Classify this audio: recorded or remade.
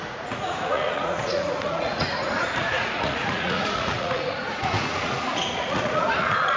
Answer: remade